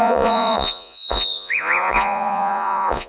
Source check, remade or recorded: remade